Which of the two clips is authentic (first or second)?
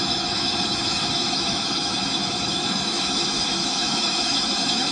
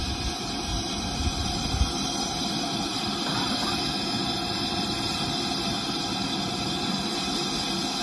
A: second